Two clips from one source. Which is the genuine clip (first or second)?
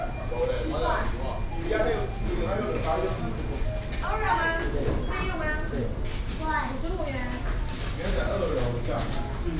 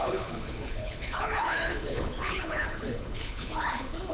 first